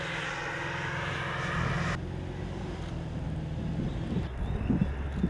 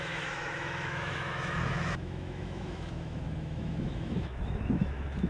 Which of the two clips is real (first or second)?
first